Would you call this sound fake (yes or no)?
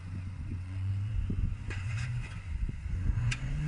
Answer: yes